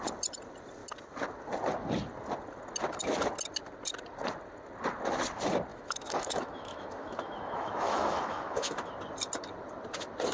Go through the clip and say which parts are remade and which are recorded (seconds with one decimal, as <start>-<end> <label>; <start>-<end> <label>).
0.0-5.7 recorded; 5.7-8.9 remade; 8.9-10.3 recorded